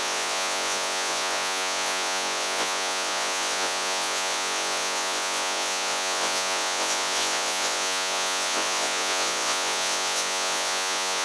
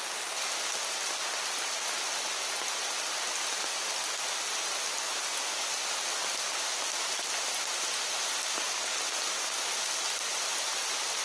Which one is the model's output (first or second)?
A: first